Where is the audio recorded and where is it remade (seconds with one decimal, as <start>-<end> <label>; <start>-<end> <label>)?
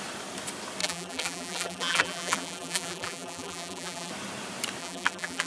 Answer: 0.0-0.8 recorded; 0.8-4.1 remade; 4.1-4.8 recorded; 4.8-5.5 remade